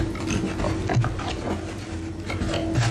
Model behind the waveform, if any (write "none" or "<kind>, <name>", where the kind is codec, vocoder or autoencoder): none